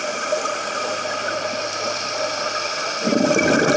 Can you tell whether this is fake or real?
real